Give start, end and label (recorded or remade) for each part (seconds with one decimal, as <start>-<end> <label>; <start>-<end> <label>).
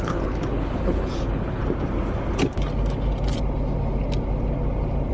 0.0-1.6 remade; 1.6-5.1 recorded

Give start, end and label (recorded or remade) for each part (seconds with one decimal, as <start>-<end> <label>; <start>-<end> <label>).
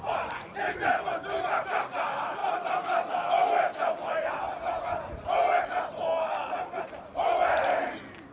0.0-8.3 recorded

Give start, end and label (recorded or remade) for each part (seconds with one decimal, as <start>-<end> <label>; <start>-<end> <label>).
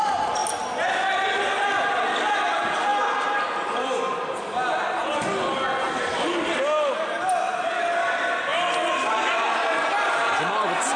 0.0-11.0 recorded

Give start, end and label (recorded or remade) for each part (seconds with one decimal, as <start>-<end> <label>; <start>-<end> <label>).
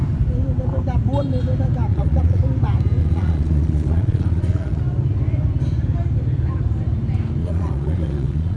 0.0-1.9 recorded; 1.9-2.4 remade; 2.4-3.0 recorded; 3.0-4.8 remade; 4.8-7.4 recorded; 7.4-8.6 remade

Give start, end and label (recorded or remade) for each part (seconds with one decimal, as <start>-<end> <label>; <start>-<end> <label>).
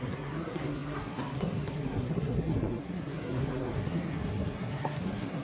0.0-5.4 remade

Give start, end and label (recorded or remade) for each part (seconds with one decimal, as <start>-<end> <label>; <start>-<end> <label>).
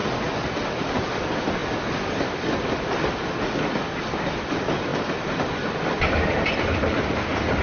0.0-0.8 recorded; 0.8-1.6 remade; 1.6-4.4 recorded; 4.4-4.9 remade; 4.9-6.0 recorded; 6.0-7.6 remade